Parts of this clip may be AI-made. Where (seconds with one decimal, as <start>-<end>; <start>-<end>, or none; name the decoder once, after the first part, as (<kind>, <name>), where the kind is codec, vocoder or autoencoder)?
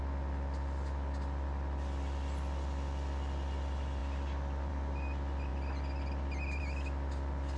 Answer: none